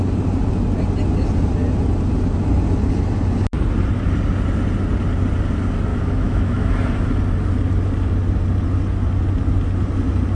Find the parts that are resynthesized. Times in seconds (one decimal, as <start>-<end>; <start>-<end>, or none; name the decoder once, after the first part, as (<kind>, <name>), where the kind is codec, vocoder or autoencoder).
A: 5.9-6.7 (autoencoder, DAC-VAE)